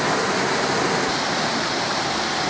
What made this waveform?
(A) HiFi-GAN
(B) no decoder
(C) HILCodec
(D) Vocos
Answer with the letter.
B